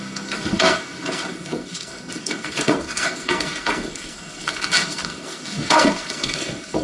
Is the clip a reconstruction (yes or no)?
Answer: yes